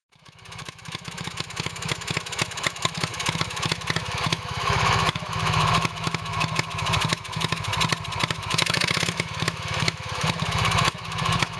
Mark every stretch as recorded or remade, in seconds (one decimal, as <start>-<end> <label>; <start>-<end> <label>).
0.0-7.7 remade; 7.7-8.3 recorded; 8.3-11.6 remade